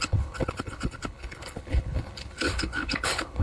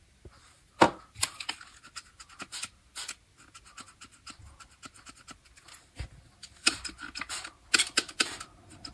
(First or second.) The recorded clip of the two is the second